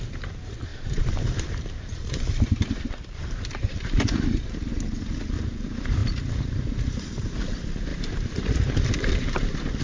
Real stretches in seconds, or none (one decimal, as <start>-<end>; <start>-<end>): 0.0-0.7; 4.5-7.9